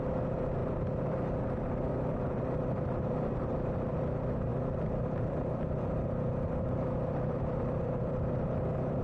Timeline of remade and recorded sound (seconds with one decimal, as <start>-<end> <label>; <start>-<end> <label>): 0.0-0.6 remade; 0.6-2.4 recorded; 2.4-9.0 remade